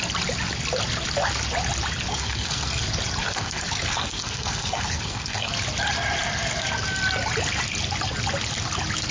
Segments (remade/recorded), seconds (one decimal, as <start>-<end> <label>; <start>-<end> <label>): 0.0-2.1 recorded; 2.1-2.8 remade; 2.8-3.2 recorded; 3.2-5.5 remade; 5.5-9.1 recorded